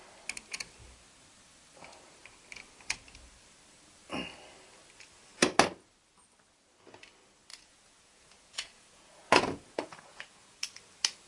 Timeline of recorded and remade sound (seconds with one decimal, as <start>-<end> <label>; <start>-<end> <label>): 0.0-7.5 recorded; 7.5-10.6 remade; 10.6-11.3 recorded